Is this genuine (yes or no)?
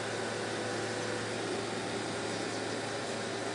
yes